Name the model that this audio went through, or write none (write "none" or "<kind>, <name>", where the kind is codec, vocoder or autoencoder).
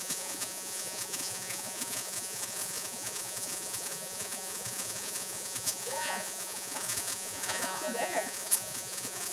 vocoder, Vocos